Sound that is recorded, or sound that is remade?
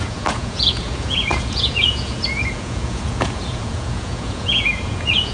remade